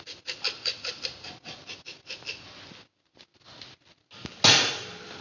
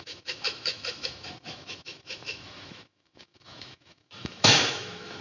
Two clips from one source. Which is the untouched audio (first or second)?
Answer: first